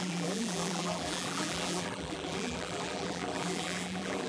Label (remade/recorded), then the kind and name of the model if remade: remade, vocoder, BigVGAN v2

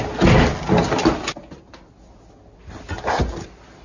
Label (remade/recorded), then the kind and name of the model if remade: recorded